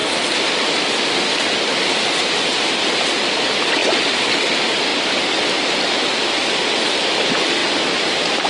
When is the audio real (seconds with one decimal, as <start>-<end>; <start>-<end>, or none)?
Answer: 0.0-8.5